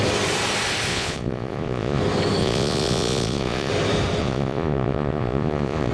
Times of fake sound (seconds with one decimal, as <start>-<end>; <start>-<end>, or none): 0.9-2.0; 2.4-3.7; 4.2-5.9